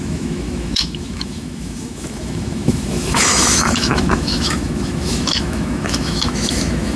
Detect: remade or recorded remade